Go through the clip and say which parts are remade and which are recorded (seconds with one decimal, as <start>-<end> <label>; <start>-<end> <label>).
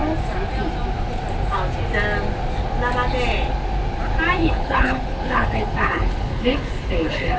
0.0-4.4 recorded; 4.4-7.4 remade